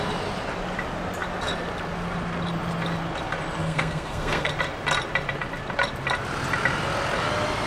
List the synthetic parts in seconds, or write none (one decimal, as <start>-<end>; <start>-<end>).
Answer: 3.6-4.5